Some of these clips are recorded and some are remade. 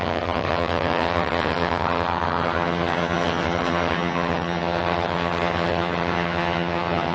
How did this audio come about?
remade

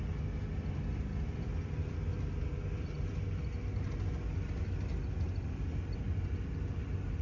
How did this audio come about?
recorded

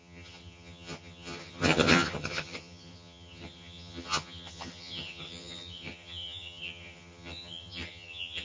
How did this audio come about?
remade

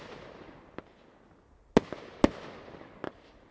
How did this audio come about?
recorded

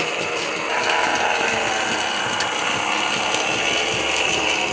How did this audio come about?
recorded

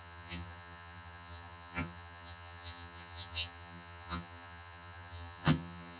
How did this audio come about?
remade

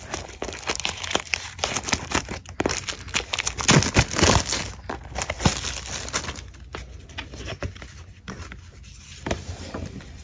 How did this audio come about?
recorded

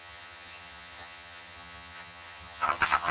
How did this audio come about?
remade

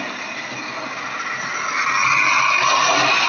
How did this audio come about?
recorded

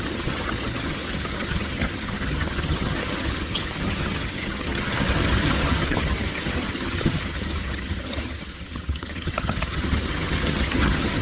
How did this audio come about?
remade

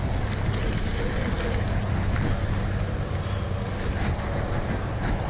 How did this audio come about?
recorded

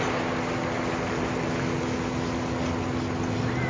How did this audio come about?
recorded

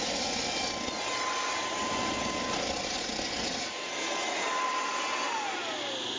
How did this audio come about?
recorded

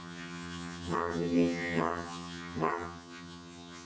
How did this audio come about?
remade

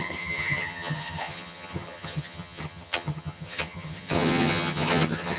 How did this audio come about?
remade